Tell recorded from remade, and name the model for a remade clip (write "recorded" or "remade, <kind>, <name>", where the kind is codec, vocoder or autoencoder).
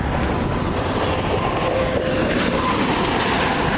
recorded